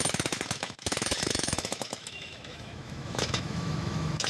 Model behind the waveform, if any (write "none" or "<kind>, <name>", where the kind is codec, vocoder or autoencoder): autoencoder, DAC-VAE